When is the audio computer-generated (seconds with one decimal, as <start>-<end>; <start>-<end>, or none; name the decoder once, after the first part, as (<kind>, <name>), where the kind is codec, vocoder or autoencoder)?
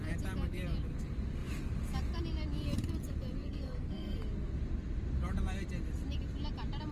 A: 3.4-4.2 (codec, SNAC)